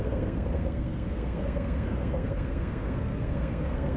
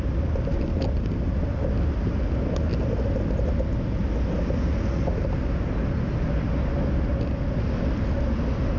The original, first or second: second